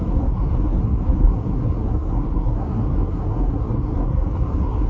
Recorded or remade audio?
remade